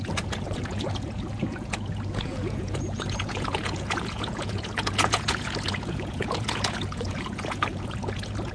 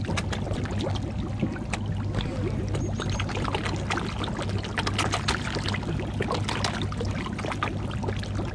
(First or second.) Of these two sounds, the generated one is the first